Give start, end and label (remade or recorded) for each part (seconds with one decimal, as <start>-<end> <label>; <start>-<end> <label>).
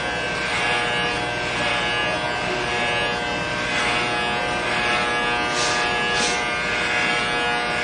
0.0-7.8 recorded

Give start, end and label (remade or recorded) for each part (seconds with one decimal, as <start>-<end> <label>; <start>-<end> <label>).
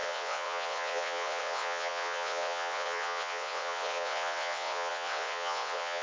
0.0-6.0 remade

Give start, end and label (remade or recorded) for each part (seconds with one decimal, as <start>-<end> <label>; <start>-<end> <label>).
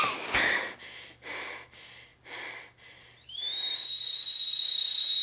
0.0-5.2 recorded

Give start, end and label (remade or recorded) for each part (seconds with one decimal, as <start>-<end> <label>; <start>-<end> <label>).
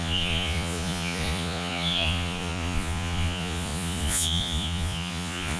0.0-5.6 remade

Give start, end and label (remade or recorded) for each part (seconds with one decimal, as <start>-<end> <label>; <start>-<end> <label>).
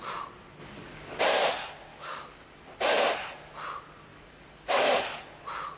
0.0-0.6 recorded; 0.6-1.2 remade; 1.2-1.9 recorded; 1.9-2.5 remade; 2.5-4.1 recorded; 4.1-5.0 remade; 5.0-5.8 recorded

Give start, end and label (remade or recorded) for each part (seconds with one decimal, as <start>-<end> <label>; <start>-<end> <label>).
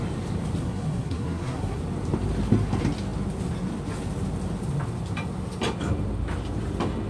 0.0-0.6 recorded; 0.6-1.8 remade; 1.8-7.1 recorded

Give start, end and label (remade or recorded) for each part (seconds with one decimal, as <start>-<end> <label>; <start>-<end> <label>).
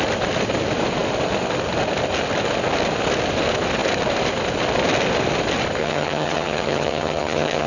0.0-5.8 recorded; 5.8-7.7 remade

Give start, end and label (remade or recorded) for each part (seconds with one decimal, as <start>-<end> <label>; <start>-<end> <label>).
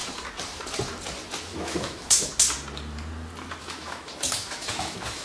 0.0-1.5 recorded; 1.5-2.3 remade; 2.3-3.6 recorded; 3.6-5.2 remade